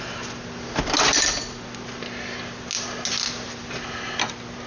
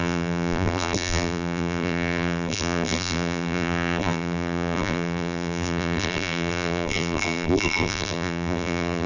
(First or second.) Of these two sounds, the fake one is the second